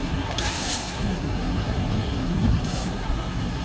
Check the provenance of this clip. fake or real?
fake